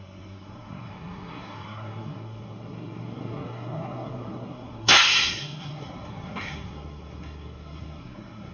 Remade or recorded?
remade